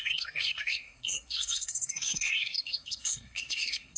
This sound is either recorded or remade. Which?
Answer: remade